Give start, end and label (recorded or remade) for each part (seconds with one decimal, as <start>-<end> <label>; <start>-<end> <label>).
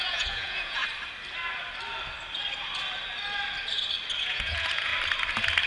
0.0-0.8 remade; 0.8-4.2 recorded; 4.2-4.9 remade; 4.9-5.7 recorded